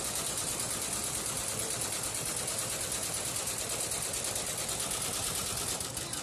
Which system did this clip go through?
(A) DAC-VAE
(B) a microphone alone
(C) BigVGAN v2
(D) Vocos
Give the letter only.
C